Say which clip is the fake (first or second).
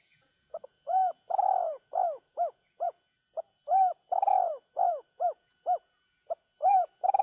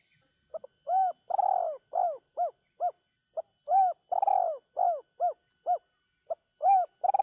first